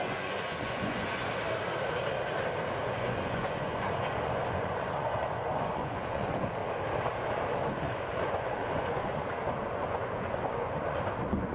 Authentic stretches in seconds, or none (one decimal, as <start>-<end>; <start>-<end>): 1.3-2.8; 6.6-7.7